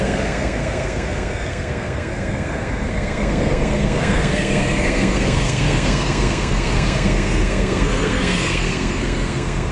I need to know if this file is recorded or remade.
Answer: remade